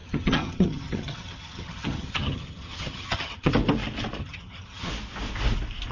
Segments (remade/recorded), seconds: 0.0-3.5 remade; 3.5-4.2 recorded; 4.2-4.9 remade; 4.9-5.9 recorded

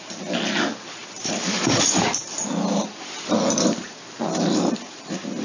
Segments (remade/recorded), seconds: 0.0-1.0 recorded; 1.0-4.2 remade; 4.2-5.4 recorded